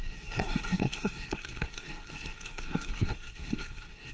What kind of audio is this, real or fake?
fake